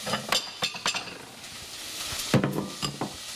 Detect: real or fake real